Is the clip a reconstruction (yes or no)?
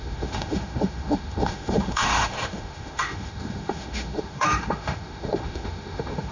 yes